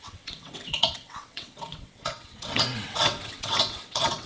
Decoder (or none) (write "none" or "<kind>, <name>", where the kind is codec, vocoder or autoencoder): vocoder, WaveNeXt